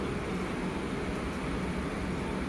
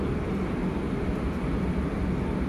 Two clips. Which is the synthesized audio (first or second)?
second